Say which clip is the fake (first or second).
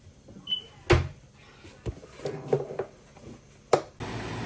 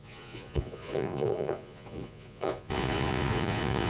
second